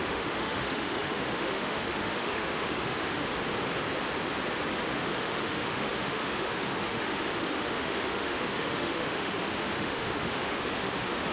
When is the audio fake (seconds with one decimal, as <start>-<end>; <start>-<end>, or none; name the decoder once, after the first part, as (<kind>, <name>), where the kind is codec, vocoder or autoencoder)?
0.0-3.3 (autoencoder, DAC-VAE); 4.8-11.3